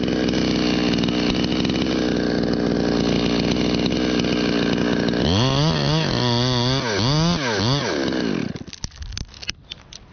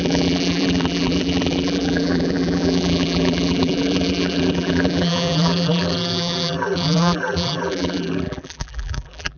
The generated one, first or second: second